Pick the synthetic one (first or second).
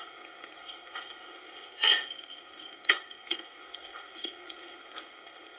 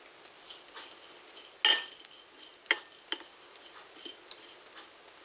first